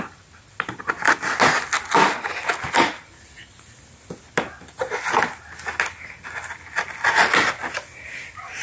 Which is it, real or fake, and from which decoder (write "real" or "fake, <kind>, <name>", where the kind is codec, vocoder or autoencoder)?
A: real